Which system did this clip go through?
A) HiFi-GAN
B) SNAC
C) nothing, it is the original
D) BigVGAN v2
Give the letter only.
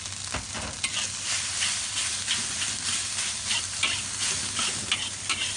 C